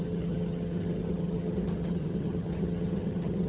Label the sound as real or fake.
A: fake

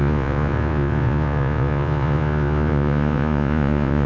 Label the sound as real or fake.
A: fake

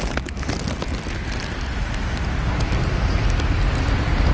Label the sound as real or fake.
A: real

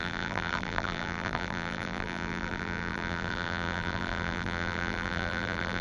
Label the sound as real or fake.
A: fake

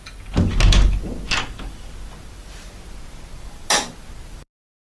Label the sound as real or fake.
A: real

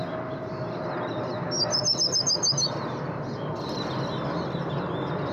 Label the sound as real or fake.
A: real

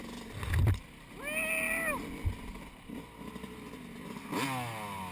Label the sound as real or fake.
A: real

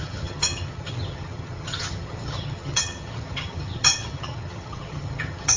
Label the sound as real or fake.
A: fake